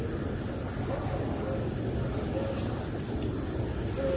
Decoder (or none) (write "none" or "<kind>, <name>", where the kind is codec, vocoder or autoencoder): none